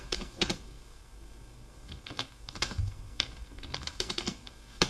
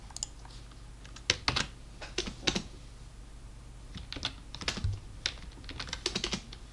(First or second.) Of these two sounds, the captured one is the second